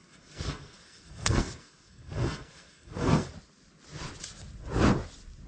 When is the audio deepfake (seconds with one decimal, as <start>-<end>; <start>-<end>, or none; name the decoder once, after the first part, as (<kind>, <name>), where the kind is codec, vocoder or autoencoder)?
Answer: 0.0-3.3 (codec, SNAC)